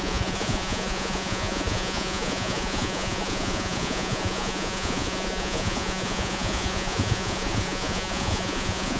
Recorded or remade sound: remade